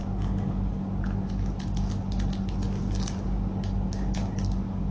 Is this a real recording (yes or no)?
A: yes